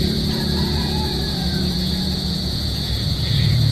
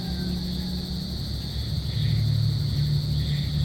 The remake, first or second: first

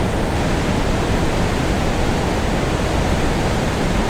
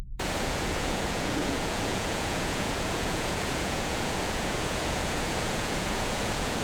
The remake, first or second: second